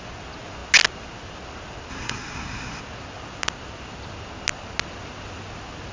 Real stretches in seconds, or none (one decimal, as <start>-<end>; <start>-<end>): 0.0-1.9; 2.8-5.9